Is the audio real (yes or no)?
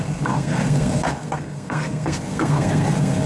no